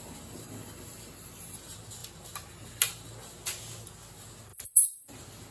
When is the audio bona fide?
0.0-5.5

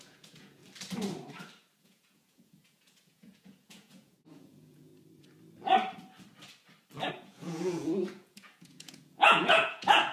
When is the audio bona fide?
0.6-1.8; 4.9-7.1

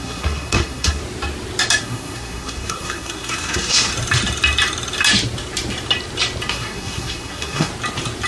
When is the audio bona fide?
1.0-1.8; 3.9-6.5; 7.7-8.3

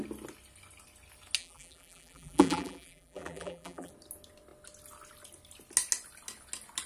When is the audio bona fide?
0.0-1.4; 3.9-6.9